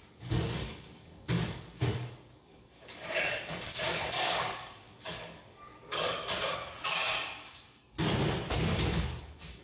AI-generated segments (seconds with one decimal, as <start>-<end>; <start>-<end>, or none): 0.0-7.8; 8.9-9.6